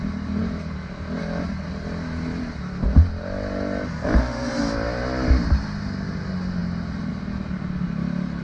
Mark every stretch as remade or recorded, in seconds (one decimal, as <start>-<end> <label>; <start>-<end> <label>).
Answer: 0.0-8.4 recorded